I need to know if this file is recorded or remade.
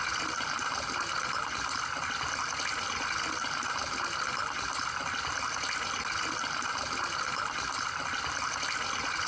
recorded